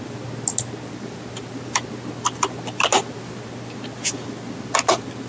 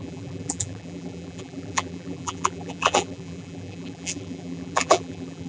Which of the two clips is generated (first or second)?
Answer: second